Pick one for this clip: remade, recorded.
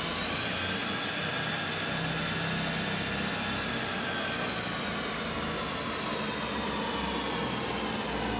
recorded